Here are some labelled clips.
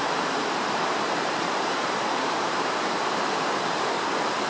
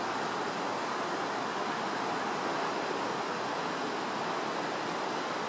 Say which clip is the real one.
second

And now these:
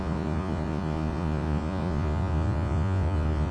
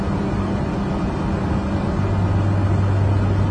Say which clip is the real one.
second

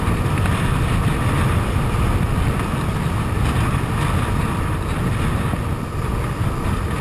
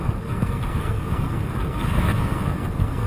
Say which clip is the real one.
first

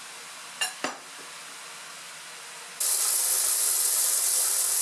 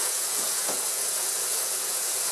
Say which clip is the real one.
first